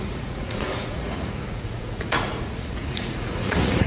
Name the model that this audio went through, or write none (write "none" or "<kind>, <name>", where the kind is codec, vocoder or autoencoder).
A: vocoder, Vocos